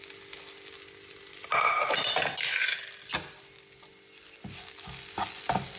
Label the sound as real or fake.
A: real